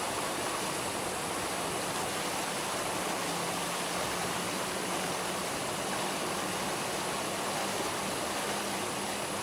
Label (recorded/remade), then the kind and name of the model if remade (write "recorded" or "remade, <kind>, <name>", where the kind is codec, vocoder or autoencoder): recorded